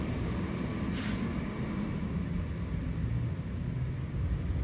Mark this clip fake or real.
real